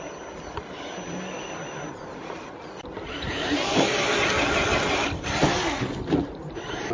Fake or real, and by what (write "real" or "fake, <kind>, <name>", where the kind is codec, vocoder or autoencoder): real